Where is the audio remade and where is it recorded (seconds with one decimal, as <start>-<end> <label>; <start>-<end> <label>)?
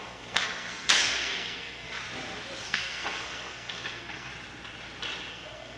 0.0-2.0 remade; 2.0-2.6 recorded; 2.6-4.3 remade; 4.3-5.3 recorded; 5.3-5.8 remade